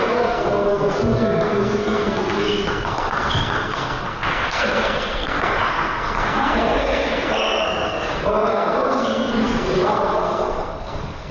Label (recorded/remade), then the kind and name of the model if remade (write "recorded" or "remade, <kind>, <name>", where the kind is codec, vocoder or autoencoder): remade, codec, SNAC